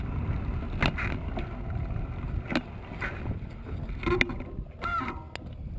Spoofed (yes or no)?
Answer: no